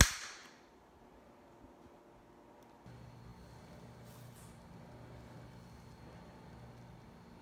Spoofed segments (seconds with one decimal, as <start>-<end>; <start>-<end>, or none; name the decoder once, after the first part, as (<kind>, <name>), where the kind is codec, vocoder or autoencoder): none